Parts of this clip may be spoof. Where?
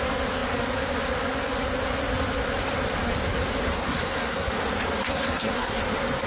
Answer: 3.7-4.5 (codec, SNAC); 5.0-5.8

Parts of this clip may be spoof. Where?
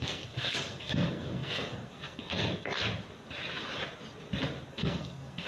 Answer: 0.0-2.8 (codec, SNAC); 4.7-5.5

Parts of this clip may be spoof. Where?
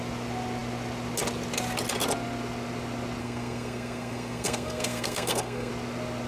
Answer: 3.2-5.7 (codec, SNAC)